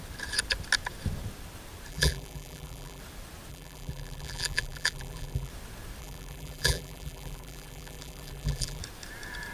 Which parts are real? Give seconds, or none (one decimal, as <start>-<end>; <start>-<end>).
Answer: 0.0-1.9; 3.0-3.5; 5.5-6.0; 8.8-9.5